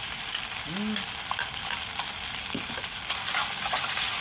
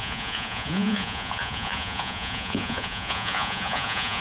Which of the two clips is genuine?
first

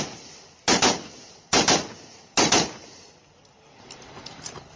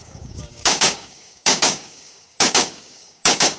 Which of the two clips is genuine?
first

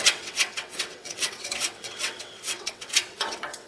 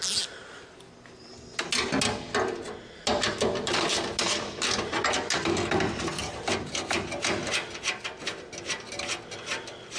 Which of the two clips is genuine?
second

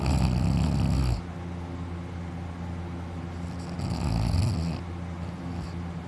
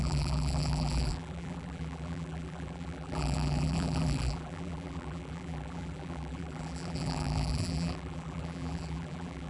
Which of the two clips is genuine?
first